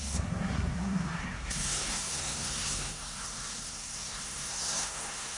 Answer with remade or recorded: remade